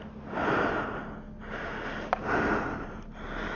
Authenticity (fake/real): real